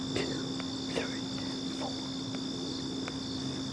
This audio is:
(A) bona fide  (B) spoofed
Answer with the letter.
A